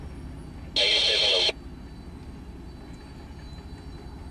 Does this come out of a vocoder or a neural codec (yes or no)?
no